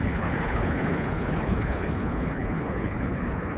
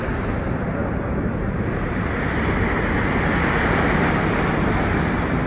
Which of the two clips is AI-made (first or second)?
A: first